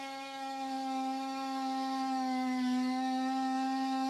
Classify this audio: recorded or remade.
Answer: remade